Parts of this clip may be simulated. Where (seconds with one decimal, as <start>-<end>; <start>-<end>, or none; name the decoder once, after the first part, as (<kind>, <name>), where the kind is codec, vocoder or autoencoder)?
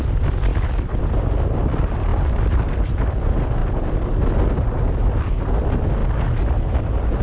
2.1-3.2 (vocoder, BigVGAN v2); 3.6-4.2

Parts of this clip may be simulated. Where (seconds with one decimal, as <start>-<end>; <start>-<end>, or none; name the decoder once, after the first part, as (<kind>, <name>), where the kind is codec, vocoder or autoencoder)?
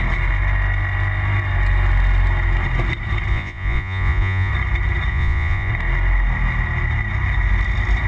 3.3-4.5 (vocoder, Vocos); 5.1-5.7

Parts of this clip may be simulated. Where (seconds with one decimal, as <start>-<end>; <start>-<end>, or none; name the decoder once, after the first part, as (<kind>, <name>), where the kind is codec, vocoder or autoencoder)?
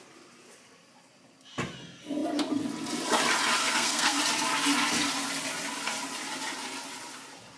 3.6-4.2 (codec, SNAC)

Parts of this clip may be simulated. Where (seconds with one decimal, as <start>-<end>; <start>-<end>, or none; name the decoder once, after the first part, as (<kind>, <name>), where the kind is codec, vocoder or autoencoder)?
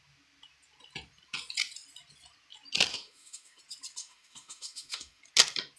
2.9-3.6 (autoencoder, DAC-VAE); 4.0-5.2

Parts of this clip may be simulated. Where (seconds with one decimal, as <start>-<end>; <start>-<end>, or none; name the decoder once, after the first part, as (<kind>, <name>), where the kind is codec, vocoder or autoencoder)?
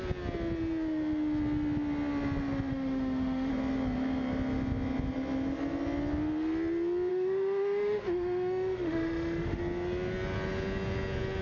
2.7-3.5 (autoencoder, DAC-VAE); 7.1-9.6